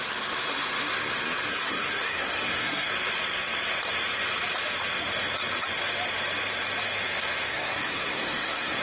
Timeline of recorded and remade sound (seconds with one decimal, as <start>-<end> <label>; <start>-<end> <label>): 0.0-1.5 recorded; 1.5-2.9 remade; 2.9-7.5 recorded; 7.5-8.8 remade